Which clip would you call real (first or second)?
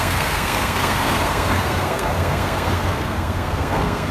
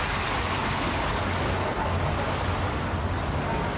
second